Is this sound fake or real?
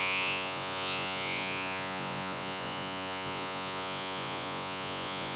fake